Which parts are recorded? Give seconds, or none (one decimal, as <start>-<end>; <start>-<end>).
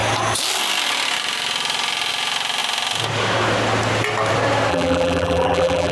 0.0-4.7